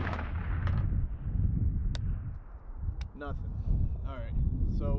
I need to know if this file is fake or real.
real